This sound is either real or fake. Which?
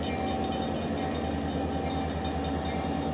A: real